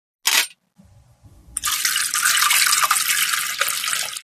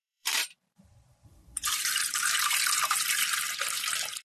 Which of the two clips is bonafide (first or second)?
first